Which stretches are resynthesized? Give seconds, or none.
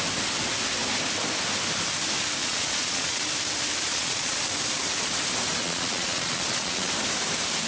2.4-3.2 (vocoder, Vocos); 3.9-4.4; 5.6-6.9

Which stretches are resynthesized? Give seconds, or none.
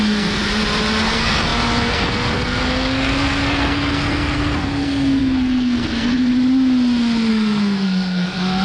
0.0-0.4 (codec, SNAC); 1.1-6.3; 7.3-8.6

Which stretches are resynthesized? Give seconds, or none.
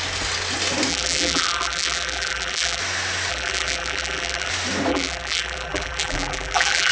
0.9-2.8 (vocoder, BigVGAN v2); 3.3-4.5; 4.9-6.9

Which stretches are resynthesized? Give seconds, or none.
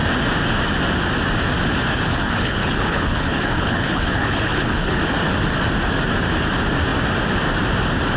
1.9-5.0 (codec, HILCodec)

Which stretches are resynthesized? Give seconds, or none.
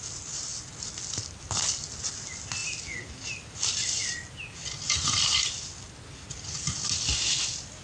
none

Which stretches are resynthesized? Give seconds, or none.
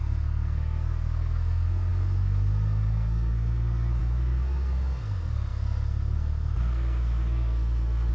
0.0-8.1 (codec, SNAC)